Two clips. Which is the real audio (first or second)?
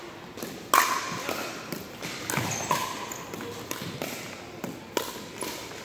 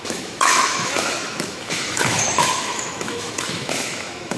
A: first